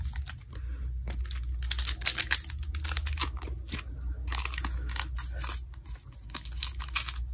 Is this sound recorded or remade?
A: recorded